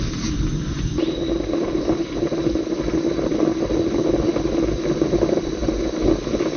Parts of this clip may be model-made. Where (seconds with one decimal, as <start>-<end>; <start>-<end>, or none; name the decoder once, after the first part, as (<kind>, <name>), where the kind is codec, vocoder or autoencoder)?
none

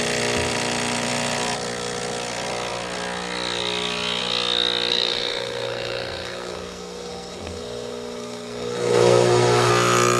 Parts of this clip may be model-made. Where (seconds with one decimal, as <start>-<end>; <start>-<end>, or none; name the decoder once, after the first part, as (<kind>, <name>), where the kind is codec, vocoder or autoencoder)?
4.9-9.7 (codec, SNAC)

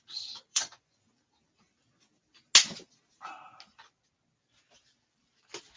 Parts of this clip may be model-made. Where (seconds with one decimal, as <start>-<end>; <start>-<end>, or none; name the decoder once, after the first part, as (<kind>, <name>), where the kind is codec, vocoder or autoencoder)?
0.5-1.0 (vocoder, Vocos)